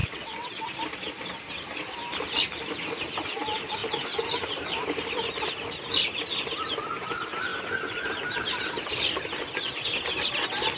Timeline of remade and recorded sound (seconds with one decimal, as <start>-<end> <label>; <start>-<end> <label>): 0.0-0.7 remade; 0.7-10.8 recorded